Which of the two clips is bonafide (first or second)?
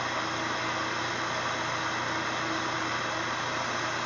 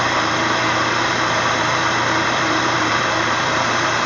first